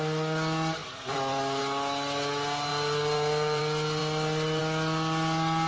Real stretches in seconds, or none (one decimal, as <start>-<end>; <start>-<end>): 0.0-0.8; 1.6-2.7; 3.6-5.7